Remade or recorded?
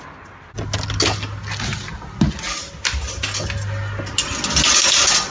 recorded